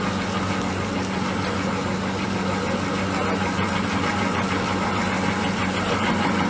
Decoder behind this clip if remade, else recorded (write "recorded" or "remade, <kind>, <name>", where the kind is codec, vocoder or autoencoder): recorded